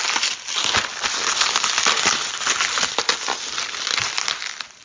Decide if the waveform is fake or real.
real